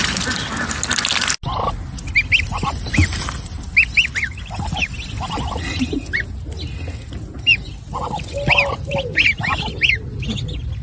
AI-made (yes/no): no